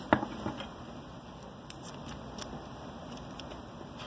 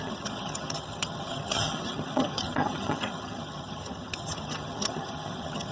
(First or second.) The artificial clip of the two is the second